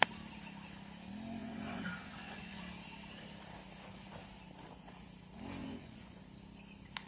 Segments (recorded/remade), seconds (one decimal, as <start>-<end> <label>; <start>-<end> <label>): 0.0-1.4 recorded; 1.4-2.6 remade; 2.6-5.6 recorded; 5.6-6.2 remade; 6.2-7.1 recorded